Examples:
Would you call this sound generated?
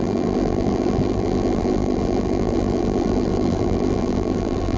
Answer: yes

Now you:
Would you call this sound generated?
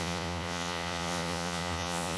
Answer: yes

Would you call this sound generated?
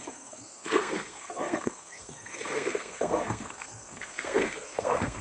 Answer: yes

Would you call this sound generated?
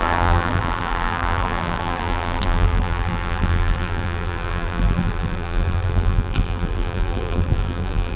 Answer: yes